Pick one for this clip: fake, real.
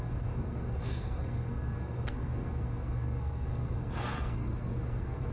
fake